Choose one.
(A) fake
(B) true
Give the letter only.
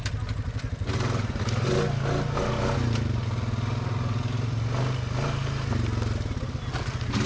B